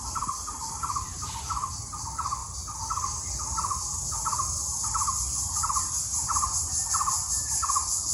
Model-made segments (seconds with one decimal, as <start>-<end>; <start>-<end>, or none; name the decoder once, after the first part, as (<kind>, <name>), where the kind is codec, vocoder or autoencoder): 0.6-1.3 (vocoder, BigVGAN v2)